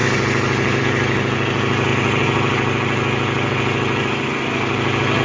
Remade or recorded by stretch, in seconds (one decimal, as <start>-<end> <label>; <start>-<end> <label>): 0.0-5.2 recorded